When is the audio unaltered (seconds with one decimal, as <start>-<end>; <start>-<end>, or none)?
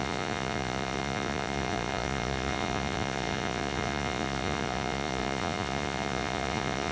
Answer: none